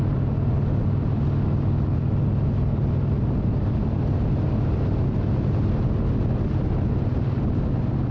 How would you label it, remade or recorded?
recorded